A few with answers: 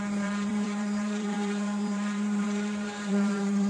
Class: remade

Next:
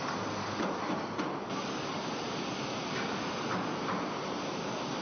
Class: recorded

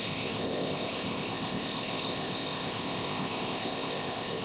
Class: remade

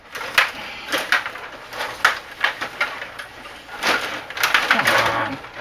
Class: recorded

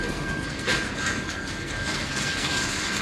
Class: remade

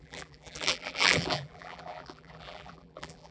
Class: remade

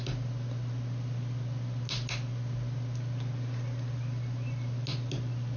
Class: recorded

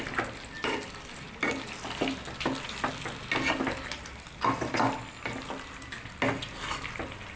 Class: recorded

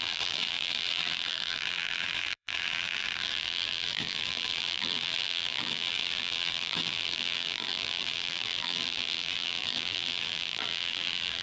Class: remade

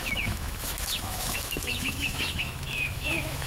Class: remade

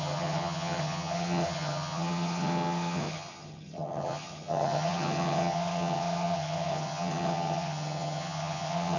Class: remade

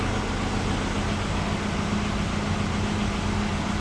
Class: recorded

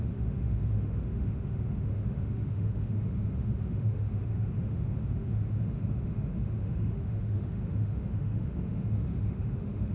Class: remade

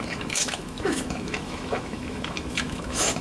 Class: remade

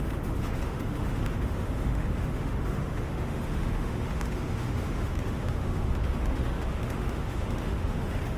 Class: remade